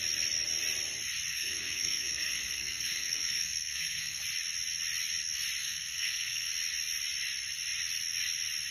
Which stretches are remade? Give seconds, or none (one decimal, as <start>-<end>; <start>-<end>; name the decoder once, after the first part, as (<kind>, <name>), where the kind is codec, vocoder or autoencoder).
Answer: 1.3-4.2 (codec, SNAC); 5.6-6.5